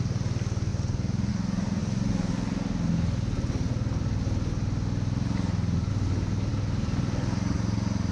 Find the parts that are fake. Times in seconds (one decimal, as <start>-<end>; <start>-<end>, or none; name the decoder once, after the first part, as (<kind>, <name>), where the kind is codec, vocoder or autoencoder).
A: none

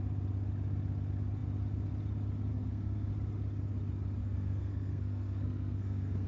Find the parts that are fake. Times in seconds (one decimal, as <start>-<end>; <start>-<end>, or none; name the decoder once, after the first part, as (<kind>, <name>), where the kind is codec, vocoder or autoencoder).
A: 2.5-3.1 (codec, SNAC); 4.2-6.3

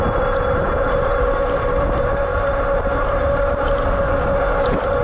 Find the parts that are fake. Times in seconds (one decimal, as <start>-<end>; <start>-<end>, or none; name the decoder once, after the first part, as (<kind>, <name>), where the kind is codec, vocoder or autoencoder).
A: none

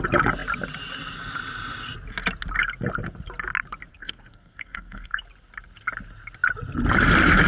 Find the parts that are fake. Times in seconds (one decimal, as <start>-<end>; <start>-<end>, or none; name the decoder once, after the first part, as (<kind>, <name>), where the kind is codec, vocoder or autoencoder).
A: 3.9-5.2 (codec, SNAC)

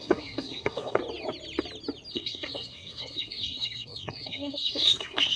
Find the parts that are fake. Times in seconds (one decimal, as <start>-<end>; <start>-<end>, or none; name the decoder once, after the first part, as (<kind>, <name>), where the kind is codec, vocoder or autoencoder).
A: 0.0-1.0 (codec, SNAC); 2.1-5.4

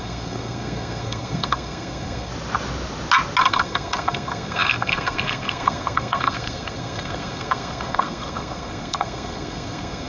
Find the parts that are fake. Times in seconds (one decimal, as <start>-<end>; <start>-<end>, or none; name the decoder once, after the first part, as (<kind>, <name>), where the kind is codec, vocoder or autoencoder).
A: 0.0-2.3 (codec, SNAC); 3.4-10.1

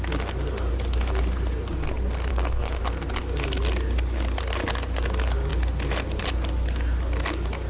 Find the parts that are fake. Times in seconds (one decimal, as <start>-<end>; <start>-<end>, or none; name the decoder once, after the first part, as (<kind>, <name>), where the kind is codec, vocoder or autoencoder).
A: 2.3-2.8 (codec, SNAC)